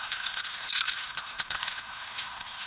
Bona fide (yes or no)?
no